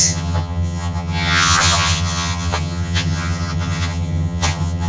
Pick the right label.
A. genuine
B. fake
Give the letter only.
B